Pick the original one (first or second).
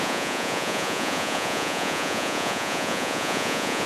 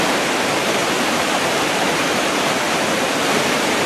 second